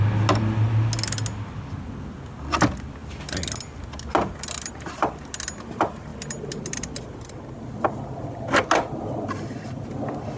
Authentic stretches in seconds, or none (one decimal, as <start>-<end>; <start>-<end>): 0.0-10.4